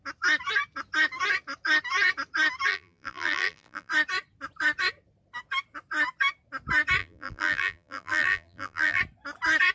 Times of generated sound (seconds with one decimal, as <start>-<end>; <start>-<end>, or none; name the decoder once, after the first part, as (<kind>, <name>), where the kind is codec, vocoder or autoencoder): 2.7-3.9 (vocoder, BigVGAN v2); 7.0-9.0